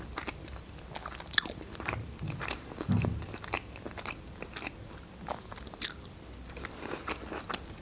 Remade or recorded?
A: recorded